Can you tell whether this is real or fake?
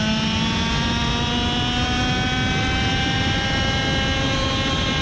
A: real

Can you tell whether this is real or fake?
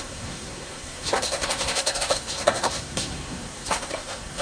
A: fake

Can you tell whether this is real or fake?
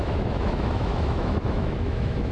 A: fake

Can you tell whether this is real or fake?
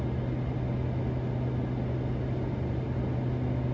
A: real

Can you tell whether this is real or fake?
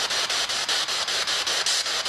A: real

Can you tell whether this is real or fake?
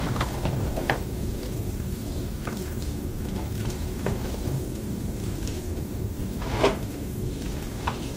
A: fake